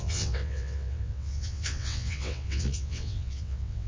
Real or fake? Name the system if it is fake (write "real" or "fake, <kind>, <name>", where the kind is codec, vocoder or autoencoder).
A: fake, vocoder, WaveNeXt